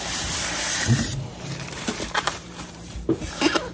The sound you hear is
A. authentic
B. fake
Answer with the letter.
B